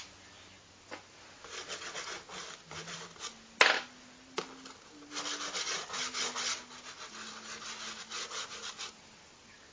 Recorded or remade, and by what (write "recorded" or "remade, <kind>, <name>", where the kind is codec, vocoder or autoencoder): recorded